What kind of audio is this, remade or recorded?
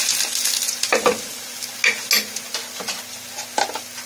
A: recorded